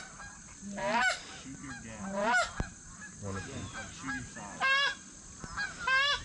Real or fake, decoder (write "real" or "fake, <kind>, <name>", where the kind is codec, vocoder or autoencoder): real